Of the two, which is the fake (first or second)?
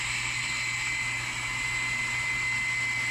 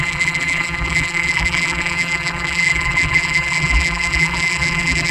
second